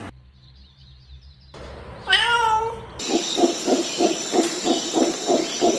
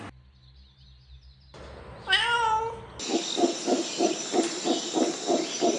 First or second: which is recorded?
second